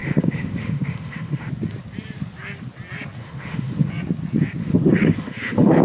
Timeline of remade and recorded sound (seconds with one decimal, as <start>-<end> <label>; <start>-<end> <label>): 0.0-1.5 remade; 1.5-3.2 recorded; 3.2-3.9 remade; 3.9-4.6 recorded; 4.6-5.8 remade